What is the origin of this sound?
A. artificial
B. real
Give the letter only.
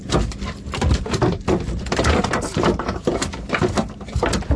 A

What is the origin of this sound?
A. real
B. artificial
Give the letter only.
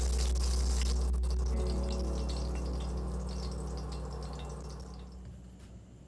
A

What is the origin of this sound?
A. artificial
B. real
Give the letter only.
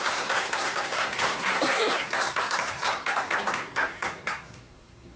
A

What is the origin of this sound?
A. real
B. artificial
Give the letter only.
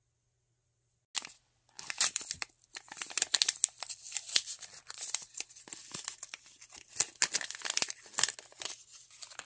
A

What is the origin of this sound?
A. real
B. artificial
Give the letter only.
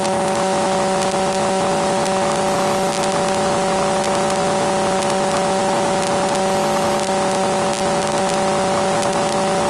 A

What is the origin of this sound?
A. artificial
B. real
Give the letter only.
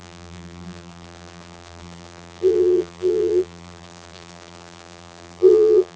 A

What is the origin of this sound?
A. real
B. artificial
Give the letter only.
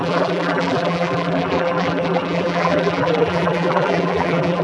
B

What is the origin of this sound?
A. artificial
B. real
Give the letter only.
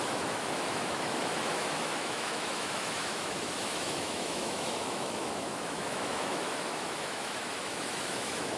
A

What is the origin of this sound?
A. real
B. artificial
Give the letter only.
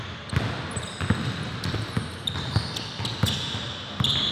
A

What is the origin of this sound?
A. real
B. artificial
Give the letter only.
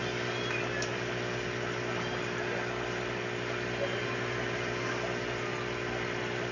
A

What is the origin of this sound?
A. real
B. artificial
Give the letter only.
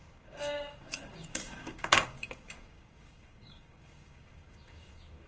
B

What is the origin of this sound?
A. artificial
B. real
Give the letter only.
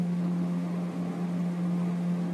A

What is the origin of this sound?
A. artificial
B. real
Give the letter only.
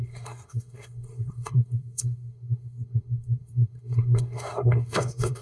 A